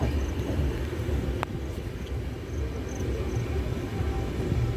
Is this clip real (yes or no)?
yes